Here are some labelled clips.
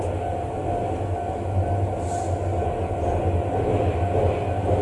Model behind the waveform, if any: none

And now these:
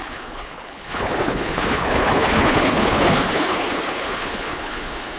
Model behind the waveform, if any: codec, HILCodec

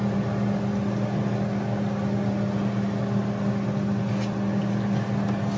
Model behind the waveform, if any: none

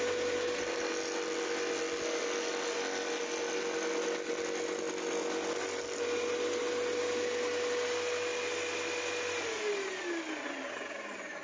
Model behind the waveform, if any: none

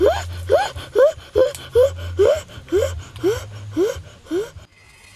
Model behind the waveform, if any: none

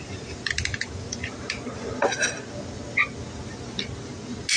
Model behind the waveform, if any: none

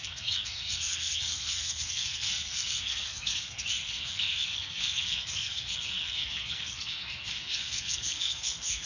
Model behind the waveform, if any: codec, SNAC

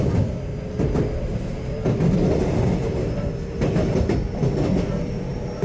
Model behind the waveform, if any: none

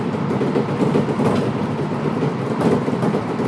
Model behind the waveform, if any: none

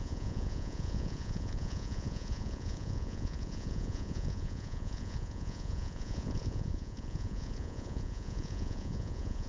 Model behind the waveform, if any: vocoder, Vocos